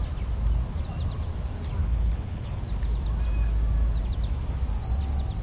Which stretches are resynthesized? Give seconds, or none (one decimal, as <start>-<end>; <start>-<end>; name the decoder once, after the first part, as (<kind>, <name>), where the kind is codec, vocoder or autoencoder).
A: 1.8-2.6 (codec, HILCodec)

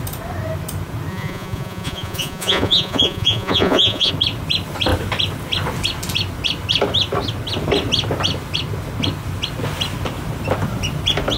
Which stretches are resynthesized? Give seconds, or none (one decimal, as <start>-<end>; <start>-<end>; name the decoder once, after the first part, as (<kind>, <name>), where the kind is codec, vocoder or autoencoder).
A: 1.1-4.1 (vocoder, Vocos)

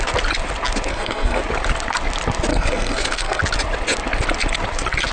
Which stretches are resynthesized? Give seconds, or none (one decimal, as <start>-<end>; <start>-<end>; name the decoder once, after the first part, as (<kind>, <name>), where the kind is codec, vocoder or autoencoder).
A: 0.9-1.4 (codec, SNAC); 2.5-3.4

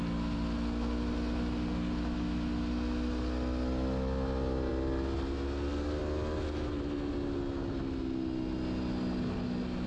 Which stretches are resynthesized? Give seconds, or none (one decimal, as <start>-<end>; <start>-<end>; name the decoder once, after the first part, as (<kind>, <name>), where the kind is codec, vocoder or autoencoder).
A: none